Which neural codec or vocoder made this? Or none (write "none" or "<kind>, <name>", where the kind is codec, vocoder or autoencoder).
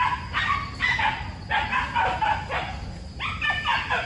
none